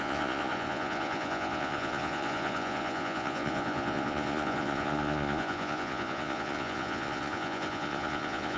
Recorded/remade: remade